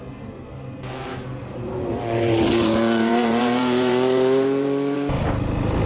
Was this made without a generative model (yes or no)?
yes